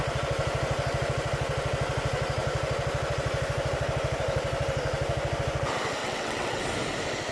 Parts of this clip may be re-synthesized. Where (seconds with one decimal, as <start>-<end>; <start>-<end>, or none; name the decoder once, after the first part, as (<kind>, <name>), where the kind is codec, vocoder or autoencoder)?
6.0-6.6 (vocoder, WaveNeXt)